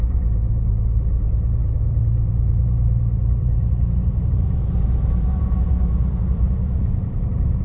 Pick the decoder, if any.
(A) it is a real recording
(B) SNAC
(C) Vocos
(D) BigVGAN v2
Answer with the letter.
D